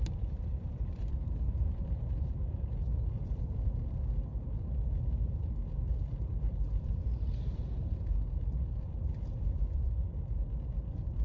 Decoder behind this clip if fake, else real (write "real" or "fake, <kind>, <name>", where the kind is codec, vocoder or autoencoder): fake, vocoder, BigVGAN v2